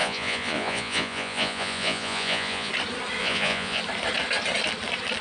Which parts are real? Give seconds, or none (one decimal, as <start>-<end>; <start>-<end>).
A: 2.7-3.2; 3.8-5.2